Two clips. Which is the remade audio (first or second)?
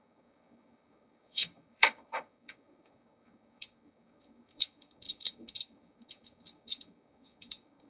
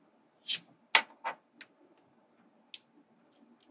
first